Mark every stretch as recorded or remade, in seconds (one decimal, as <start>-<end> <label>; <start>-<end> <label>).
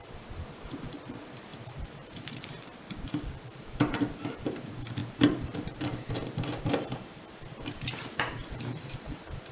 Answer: 0.0-9.5 remade